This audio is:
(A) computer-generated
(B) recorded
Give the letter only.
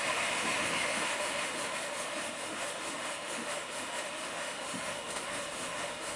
A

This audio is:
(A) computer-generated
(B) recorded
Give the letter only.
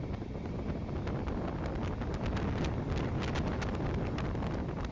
B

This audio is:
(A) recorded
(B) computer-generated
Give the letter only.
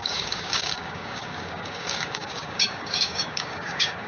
B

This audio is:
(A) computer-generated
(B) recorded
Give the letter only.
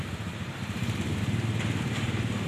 A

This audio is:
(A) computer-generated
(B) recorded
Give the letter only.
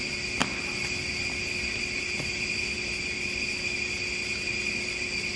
B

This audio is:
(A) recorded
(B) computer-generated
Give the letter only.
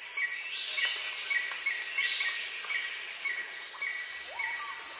A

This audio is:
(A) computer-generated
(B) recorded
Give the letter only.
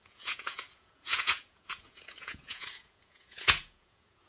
A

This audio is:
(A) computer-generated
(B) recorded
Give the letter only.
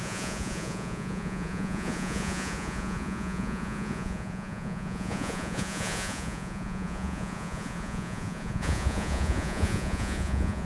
A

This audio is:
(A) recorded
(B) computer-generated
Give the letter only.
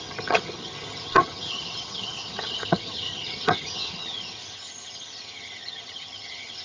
B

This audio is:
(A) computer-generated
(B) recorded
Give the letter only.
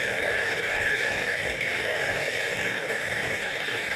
A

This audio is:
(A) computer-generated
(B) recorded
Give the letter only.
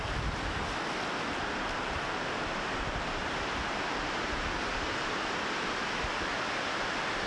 B